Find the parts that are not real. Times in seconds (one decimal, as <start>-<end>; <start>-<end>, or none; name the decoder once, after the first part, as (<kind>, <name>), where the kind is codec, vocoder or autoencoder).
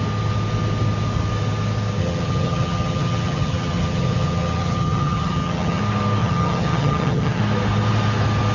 2.0-5.8 (vocoder, HiFi-GAN); 6.2-7.4